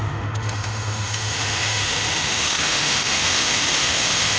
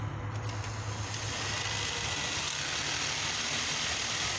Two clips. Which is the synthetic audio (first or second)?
first